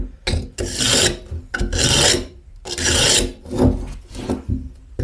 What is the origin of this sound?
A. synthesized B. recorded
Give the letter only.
B